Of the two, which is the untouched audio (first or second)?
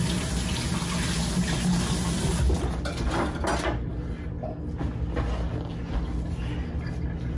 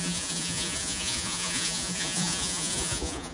first